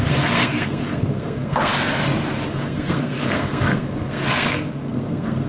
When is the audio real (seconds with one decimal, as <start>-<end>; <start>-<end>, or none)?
1.7-2.5